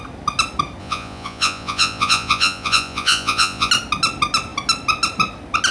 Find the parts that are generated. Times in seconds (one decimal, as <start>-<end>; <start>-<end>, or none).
0.8-3.7